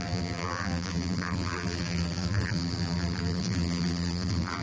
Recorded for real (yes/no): no